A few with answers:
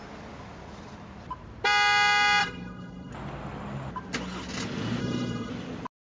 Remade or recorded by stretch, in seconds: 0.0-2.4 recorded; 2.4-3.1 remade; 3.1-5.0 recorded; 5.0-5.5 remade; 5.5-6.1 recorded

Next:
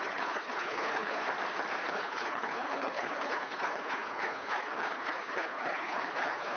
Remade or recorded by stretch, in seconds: 0.0-1.2 remade; 1.2-1.9 recorded; 1.9-6.6 remade

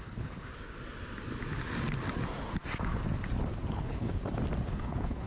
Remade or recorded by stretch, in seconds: 0.0-0.5 remade; 0.5-3.7 recorded; 3.7-4.2 remade; 4.2-4.7 recorded; 4.7-5.3 remade

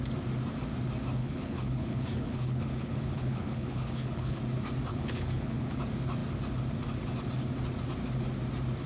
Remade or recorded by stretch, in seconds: 0.0-1.2 recorded; 1.2-4.4 remade; 4.4-4.9 recorded; 4.9-5.8 remade; 5.8-8.9 recorded

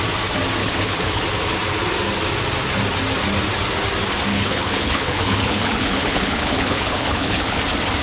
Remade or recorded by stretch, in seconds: 0.0-0.6 recorded; 0.6-1.2 remade; 1.2-4.3 recorded; 4.3-7.6 remade; 7.6-8.0 recorded

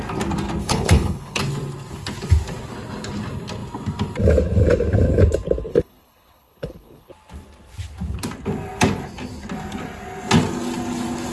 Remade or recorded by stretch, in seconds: 0.0-0.6 recorded; 0.6-1.4 remade; 1.4-5.7 recorded; 5.7-7.1 remade; 7.1-11.3 recorded